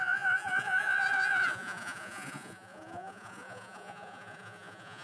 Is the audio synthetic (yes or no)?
yes